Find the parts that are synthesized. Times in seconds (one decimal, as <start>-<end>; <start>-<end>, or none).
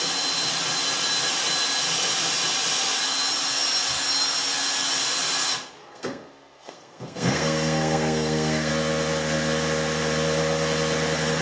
5.8-8.7